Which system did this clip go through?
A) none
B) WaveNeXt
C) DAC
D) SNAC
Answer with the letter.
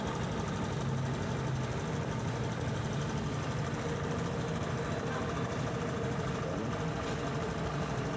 A